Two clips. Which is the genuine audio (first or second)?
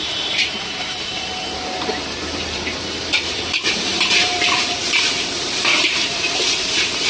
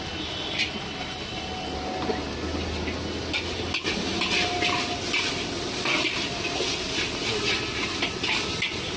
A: second